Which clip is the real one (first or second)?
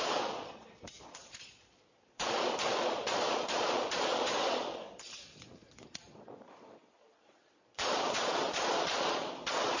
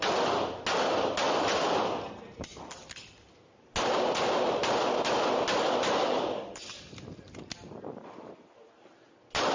second